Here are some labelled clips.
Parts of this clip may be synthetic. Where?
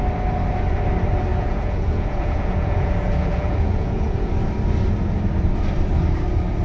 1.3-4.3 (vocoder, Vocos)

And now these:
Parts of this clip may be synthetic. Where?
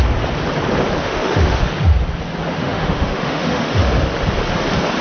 1.0-1.7 (autoencoder, DAC-VAE); 2.6-3.7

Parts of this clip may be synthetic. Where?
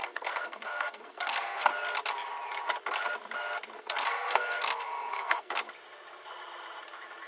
0.0-1.7 (codec, SNAC); 3.8-5.7